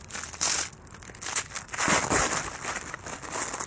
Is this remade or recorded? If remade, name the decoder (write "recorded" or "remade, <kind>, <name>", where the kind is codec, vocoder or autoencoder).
recorded